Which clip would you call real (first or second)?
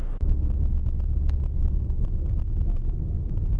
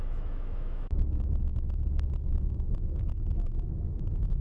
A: first